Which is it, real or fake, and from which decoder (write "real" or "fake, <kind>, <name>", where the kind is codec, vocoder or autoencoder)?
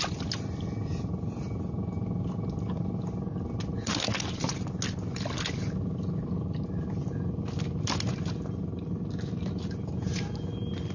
real